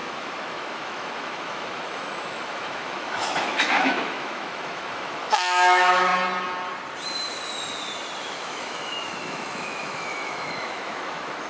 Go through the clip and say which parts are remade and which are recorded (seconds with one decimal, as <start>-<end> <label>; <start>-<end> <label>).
0.0-6.1 remade; 6.1-8.2 recorded; 8.2-11.5 remade